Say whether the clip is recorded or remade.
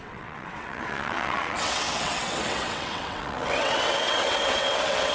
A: remade